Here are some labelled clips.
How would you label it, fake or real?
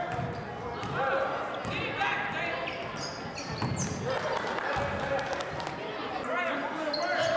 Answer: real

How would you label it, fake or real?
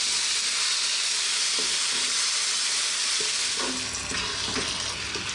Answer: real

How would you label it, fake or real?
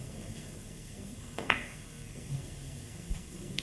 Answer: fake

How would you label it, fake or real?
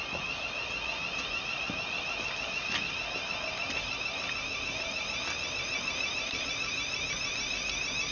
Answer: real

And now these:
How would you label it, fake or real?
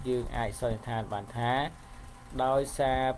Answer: real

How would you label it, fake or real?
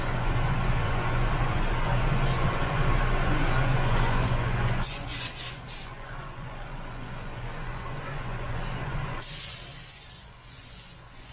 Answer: fake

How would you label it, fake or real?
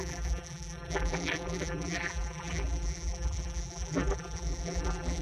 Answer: fake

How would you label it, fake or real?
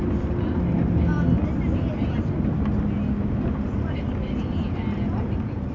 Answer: real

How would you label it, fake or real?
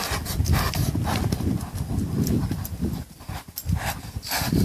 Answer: real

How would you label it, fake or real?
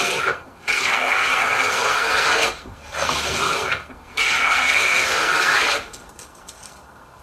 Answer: fake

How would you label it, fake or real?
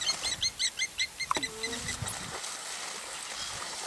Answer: real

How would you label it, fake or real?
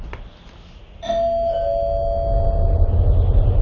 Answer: real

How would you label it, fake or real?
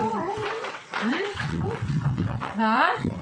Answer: fake